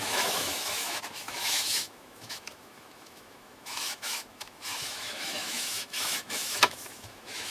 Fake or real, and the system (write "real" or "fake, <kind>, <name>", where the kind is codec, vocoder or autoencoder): fake, autoencoder, DAC-VAE